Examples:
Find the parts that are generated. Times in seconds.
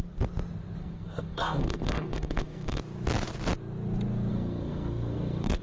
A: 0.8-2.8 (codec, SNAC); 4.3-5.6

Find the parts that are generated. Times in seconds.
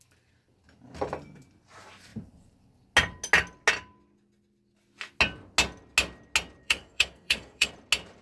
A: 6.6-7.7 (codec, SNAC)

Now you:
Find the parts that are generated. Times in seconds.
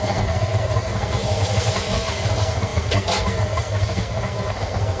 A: 0.0-5.0 (codec, SNAC)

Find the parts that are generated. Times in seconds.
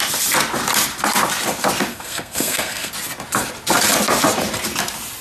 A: 1.9-2.9 (codec, SNAC)